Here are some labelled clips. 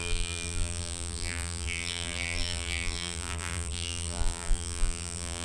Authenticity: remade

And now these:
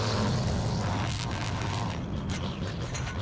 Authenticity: recorded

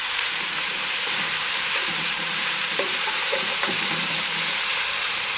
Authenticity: remade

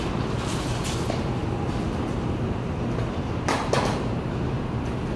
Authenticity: recorded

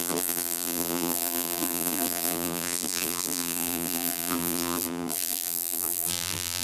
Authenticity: remade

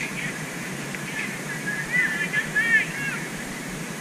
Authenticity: remade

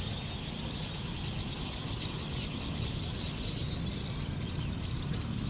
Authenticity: recorded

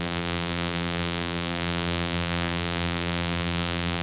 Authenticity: remade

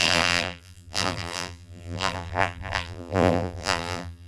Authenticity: remade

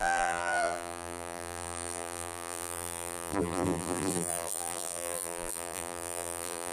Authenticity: remade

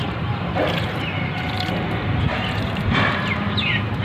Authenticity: remade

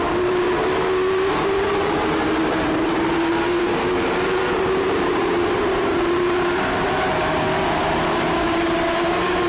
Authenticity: remade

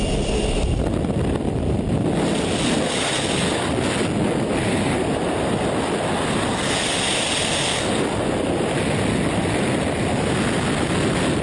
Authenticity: recorded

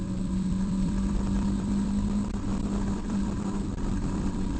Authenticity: remade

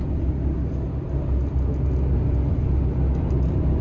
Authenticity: recorded